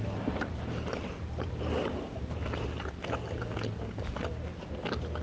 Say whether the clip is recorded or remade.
recorded